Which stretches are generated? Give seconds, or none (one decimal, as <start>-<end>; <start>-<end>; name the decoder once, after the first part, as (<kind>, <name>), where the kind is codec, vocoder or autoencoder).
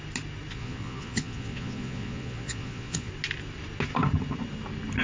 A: 0.5-3.1 (vocoder, Vocos)